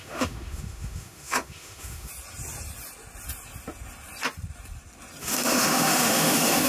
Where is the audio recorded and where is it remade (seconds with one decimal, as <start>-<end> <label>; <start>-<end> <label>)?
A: 0.0-2.1 remade; 2.1-5.2 recorded; 5.2-6.7 remade

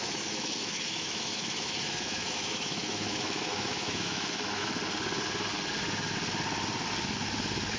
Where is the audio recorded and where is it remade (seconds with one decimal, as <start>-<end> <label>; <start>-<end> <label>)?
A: 0.0-4.7 remade; 4.7-7.8 recorded

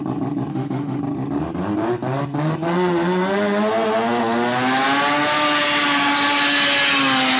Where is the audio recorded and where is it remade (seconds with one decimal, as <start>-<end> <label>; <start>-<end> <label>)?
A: 0.0-0.5 recorded; 0.5-1.0 remade; 1.0-7.4 recorded

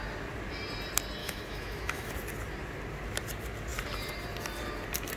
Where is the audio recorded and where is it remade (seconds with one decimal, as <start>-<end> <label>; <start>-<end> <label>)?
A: 0.0-1.2 recorded; 1.2-2.1 remade; 2.1-5.2 recorded

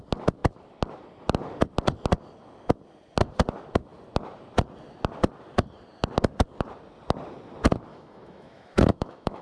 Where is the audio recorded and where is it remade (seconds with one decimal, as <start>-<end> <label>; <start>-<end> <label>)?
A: 0.0-7.9 recorded; 7.9-9.4 remade

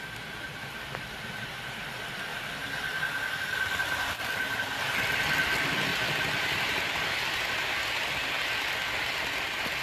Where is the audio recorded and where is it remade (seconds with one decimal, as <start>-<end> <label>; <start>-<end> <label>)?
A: 0.0-9.8 recorded